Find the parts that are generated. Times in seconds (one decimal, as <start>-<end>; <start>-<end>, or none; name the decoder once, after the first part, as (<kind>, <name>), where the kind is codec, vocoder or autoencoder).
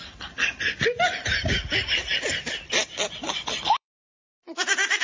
1.8-5.0 (vocoder, BigVGAN v2)